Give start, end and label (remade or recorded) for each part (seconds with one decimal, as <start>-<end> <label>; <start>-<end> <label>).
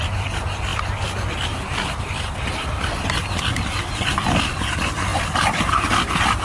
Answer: 0.0-6.4 recorded